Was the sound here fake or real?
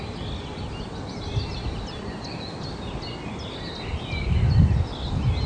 real